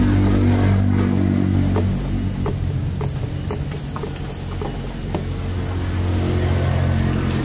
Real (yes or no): yes